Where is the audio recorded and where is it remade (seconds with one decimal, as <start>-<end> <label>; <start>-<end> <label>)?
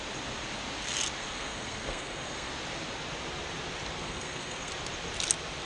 0.0-1.2 recorded; 1.2-2.5 remade; 2.5-4.0 recorded; 4.0-4.7 remade; 4.7-5.7 recorded